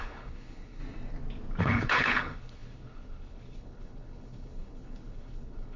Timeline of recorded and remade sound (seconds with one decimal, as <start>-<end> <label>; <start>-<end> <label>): 0.0-0.8 remade; 0.8-1.6 recorded; 1.6-5.8 remade